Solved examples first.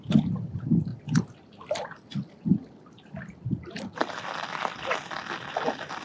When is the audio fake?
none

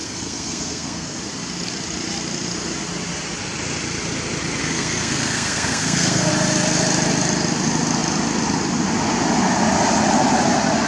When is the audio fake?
0.0-1.2 (codec, SNAC); 4.6-6.3

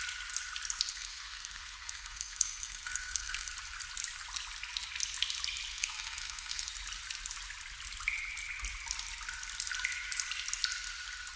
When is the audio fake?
0.9-3.5 (codec, SNAC); 5.7-6.7

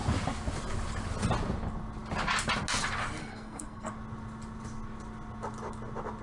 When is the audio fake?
3.2-3.9 (codec, SNAC)